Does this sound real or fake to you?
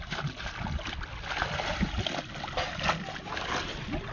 real